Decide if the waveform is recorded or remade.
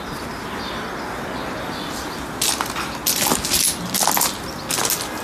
recorded